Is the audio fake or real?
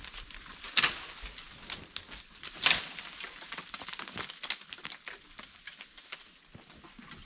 real